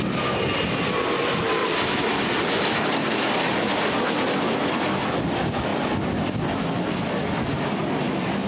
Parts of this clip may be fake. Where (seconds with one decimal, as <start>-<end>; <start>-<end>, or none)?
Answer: 1.6-4.5